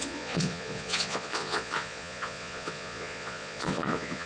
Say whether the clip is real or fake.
fake